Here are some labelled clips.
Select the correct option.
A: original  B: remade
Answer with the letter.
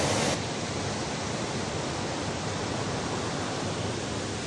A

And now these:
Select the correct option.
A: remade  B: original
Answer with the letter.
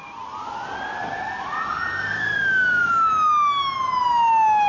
B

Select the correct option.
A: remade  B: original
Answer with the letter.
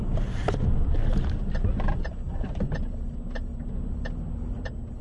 B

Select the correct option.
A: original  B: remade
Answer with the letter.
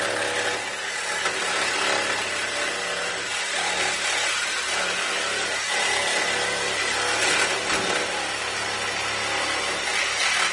A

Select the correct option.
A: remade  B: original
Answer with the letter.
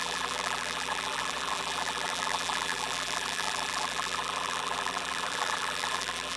A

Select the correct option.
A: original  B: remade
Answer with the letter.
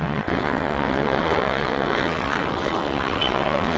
B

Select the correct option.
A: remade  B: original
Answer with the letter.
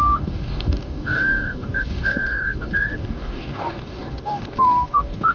A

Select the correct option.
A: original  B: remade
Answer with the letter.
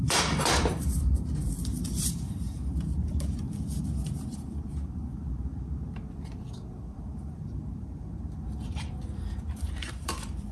B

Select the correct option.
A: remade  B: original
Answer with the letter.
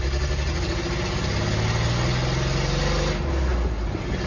B